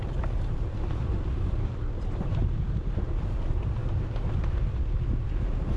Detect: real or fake fake